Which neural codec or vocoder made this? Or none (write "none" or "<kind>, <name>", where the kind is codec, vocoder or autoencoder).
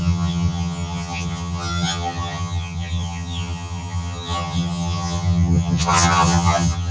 vocoder, HiFi-GAN